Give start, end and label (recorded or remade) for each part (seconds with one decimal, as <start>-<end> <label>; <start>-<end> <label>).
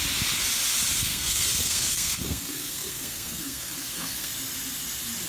0.0-1.1 recorded; 1.1-4.3 remade; 4.3-5.3 recorded